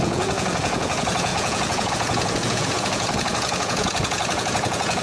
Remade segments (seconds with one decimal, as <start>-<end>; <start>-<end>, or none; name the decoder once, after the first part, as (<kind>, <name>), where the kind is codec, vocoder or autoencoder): 0.0-5.0 (vocoder, Vocos)